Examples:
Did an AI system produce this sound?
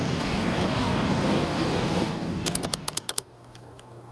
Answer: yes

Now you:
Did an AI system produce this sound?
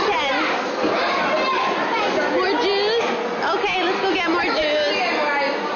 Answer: no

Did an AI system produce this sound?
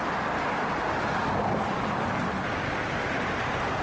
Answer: no